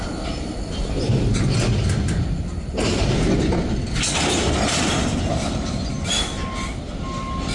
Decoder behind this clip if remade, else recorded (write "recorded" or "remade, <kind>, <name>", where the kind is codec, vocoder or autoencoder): recorded